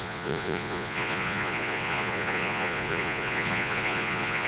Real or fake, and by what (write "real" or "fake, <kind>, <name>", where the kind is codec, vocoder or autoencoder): fake, vocoder, Vocos